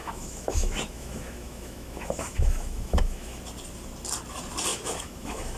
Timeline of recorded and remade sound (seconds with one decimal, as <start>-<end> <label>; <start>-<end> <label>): 0.0-3.4 remade; 3.4-4.7 recorded; 4.7-5.6 remade